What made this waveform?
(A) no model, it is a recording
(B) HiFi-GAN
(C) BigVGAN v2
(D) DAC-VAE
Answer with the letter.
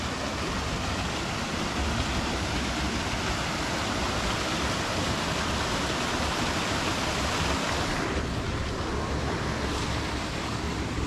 A